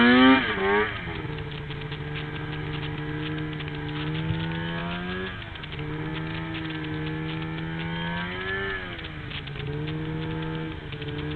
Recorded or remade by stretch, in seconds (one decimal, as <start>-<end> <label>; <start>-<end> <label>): 0.0-11.4 recorded